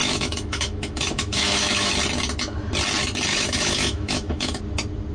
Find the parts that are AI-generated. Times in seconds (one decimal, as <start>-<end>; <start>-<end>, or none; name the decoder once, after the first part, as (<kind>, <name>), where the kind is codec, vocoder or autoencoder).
0.0-1.9 (autoencoder, DAC-VAE); 3.3-4.6